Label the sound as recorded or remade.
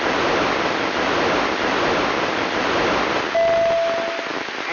recorded